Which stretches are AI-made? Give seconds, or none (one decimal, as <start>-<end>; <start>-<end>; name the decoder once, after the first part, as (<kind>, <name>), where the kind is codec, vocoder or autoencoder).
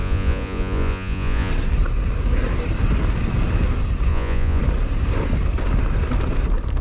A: 0.0-1.5 (vocoder, Vocos); 4.1-4.6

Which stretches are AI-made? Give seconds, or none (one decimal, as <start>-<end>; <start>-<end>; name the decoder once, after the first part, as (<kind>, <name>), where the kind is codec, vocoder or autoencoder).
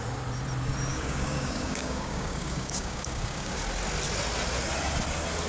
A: 0.9-3.6 (codec, DAC)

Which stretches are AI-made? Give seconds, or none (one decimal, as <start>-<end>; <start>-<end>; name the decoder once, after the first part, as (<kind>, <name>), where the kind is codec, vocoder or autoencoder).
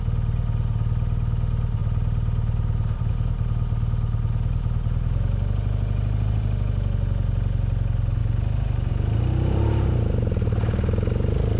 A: 1.8-3.1 (vocoder, BigVGAN v2)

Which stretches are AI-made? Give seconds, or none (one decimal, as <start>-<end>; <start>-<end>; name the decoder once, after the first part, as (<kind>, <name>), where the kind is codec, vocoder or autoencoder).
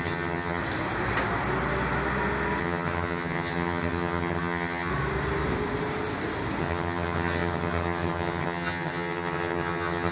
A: 0.0-0.6 (vocoder, HiFi-GAN); 2.6-4.9; 6.6-10.1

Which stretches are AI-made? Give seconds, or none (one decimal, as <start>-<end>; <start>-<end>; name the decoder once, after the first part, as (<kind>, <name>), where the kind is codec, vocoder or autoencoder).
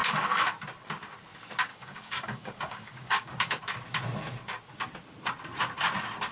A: 1.7-3.6 (codec, DAC)